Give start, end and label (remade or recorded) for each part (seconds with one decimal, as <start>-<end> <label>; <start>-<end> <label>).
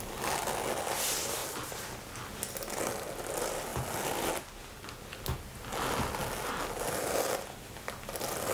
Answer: 0.0-8.5 recorded